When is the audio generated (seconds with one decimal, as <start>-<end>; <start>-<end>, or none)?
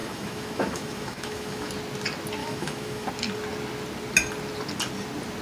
0.0-1.7; 2.4-3.1